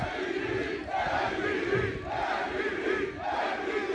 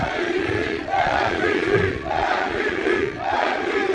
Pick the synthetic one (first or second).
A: second